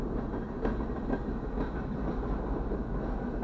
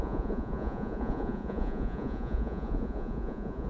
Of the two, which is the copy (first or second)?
second